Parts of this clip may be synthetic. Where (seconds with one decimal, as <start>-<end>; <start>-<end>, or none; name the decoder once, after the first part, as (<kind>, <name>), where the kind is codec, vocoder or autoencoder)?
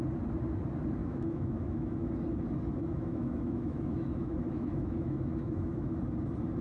1.0-2.1 (autoencoder, DAC-VAE); 2.8-6.0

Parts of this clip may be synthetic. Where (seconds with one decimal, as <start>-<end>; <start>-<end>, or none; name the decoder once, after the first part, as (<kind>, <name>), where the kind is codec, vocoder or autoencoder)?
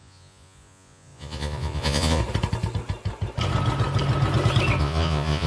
0.0-2.2 (vocoder, Vocos); 4.8-5.5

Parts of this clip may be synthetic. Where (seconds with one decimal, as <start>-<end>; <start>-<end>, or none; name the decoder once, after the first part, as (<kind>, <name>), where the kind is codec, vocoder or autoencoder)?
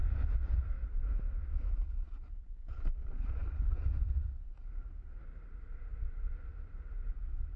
none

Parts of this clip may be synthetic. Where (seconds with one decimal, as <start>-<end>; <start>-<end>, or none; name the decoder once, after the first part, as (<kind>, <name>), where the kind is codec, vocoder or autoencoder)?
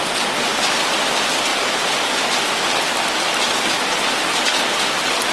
none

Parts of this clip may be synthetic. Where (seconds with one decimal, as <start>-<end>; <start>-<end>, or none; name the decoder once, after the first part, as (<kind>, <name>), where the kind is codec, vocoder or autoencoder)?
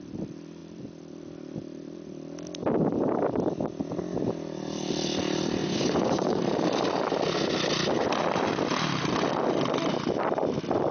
5.6-6.4 (vocoder, Vocos)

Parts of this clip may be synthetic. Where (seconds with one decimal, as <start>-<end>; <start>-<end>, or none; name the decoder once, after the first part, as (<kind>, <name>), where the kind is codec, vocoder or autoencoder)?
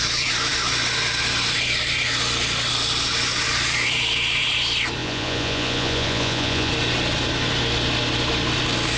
5.0-6.7 (vocoder, Vocos)